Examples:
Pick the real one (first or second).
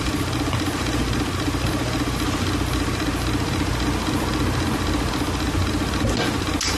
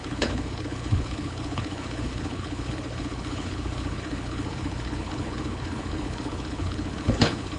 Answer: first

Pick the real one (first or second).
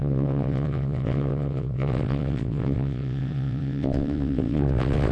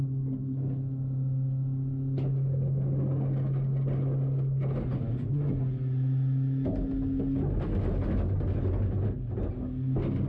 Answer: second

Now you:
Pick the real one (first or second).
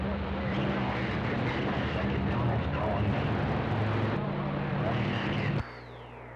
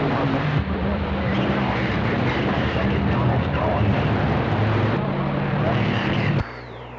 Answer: first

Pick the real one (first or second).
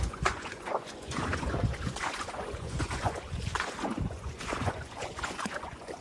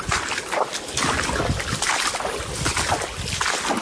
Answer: second